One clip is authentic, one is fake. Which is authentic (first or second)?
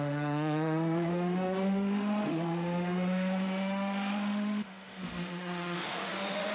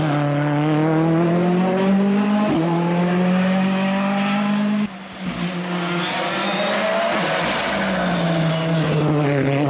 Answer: second